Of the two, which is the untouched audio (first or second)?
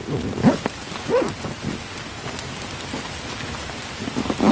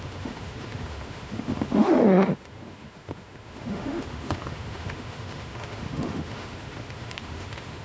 first